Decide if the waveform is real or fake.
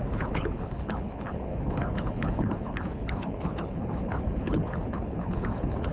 fake